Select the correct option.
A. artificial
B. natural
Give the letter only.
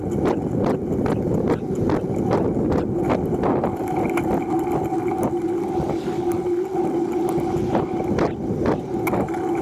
B